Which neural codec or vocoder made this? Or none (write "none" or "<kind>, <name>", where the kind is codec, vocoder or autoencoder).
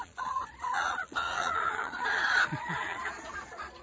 vocoder, Vocos